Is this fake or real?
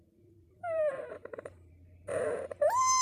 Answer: fake